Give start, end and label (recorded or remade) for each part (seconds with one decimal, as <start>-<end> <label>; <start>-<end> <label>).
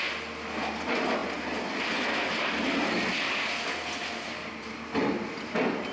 0.0-5.9 recorded